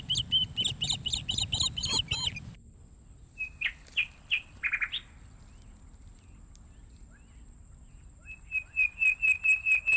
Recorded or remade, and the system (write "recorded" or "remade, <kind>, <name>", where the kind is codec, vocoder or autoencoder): recorded